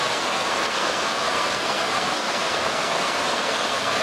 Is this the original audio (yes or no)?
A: no